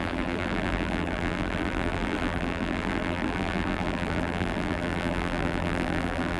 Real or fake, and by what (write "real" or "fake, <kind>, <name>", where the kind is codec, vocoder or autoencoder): fake, vocoder, BigVGAN v2